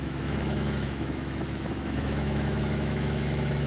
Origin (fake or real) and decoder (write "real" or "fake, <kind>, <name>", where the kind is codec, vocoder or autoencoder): fake, autoencoder, DAC-VAE